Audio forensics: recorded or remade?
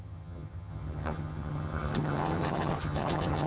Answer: remade